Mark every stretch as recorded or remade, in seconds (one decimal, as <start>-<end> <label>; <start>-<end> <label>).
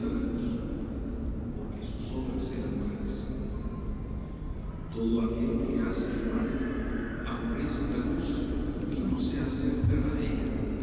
0.0-10.8 recorded